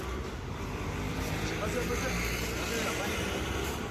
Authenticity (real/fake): fake